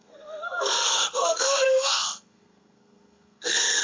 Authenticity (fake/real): fake